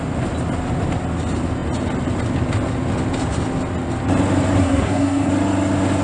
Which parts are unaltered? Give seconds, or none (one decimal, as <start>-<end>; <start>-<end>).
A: 0.0-4.6; 5.3-6.0